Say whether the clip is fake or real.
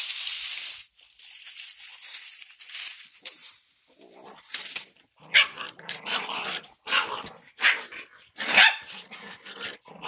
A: fake